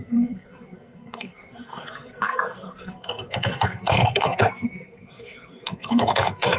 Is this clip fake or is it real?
fake